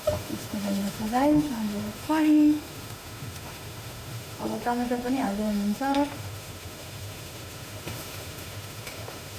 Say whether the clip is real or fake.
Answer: fake